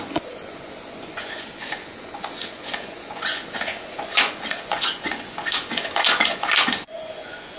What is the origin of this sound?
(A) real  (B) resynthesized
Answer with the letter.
B